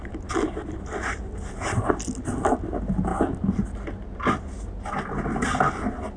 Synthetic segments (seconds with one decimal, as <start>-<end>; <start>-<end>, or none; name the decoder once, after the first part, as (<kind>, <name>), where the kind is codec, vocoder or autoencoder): none